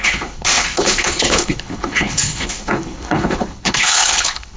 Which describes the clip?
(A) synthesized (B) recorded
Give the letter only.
A